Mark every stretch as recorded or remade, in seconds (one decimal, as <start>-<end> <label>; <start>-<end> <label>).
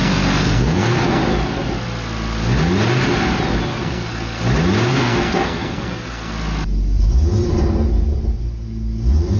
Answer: 0.0-1.2 remade; 1.2-3.7 recorded; 3.7-4.4 remade; 4.4-4.9 recorded; 4.9-6.3 remade; 6.3-9.4 recorded